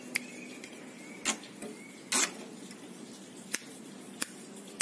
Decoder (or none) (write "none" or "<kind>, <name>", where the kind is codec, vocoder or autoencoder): none